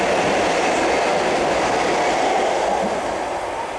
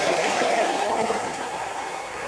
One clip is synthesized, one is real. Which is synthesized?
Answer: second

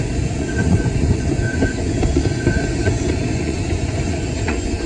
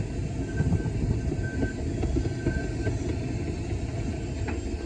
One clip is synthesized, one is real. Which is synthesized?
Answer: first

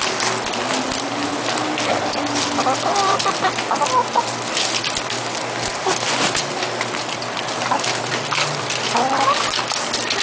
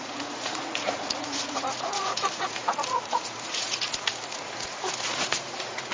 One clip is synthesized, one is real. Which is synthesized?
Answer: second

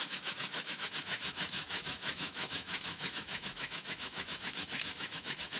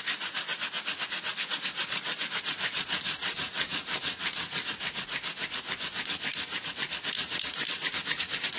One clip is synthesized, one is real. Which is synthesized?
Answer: first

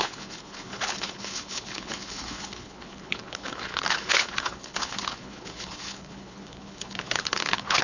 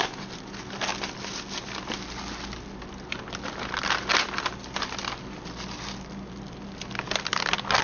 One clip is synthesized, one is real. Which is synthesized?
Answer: first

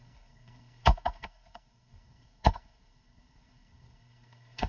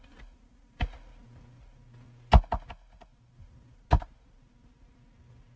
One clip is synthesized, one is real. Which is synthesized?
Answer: first